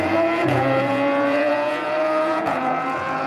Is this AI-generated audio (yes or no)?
yes